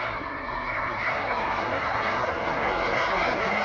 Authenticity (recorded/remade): remade